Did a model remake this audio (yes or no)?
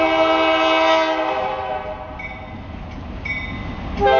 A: no